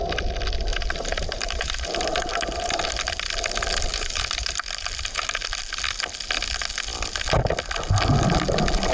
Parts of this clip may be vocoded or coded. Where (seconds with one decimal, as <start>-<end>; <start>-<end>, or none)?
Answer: 0.7-3.1; 3.9-5.4